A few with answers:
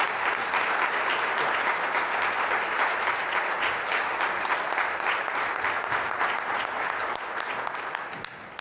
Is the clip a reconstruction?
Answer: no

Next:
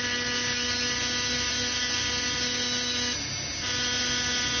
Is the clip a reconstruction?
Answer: no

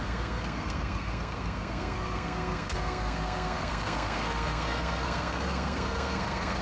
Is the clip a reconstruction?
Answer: yes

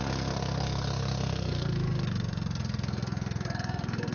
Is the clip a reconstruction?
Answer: yes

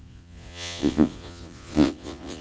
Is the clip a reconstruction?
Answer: yes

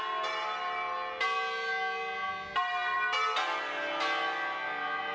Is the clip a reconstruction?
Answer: no